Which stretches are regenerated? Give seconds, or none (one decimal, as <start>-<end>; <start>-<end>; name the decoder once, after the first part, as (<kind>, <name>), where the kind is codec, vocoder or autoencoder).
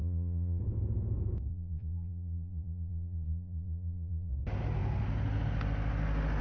0.0-0.6 (vocoder, Vocos); 1.5-4.3